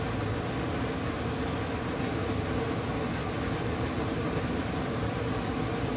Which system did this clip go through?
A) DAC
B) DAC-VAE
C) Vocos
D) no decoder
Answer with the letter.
D